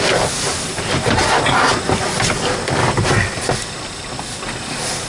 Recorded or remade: recorded